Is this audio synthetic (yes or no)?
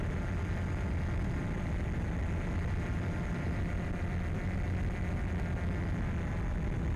no